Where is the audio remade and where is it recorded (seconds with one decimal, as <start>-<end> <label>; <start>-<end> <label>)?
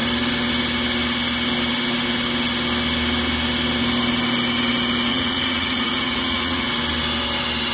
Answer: 0.0-5.1 recorded; 5.1-6.7 remade; 6.7-7.7 recorded